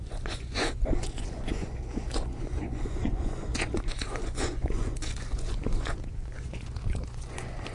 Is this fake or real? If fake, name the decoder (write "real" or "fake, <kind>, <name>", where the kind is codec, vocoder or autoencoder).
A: fake, vocoder, Vocos